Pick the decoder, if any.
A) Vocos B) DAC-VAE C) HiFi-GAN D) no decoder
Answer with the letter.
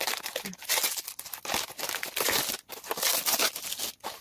D